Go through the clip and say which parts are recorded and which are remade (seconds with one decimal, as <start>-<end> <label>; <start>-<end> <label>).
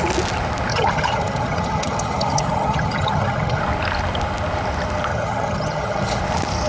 0.0-0.7 recorded; 0.7-3.6 remade; 3.6-5.1 recorded; 5.1-6.2 remade; 6.2-6.7 recorded